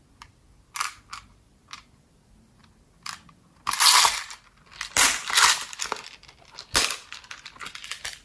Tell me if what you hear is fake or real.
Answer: real